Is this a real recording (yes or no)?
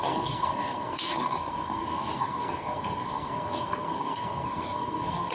no